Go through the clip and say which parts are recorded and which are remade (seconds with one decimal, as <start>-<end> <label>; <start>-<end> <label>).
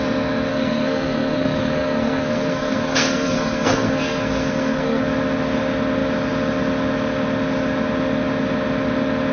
0.0-0.5 recorded; 0.5-5.0 remade; 5.0-9.3 recorded